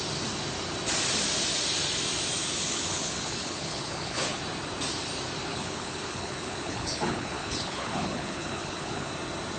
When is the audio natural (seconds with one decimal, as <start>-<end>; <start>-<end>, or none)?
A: 0.0-2.4; 4.4-5.5; 9.1-9.6